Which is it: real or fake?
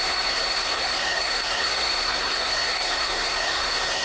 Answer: fake